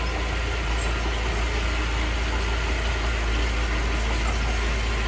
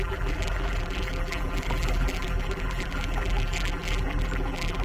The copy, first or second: second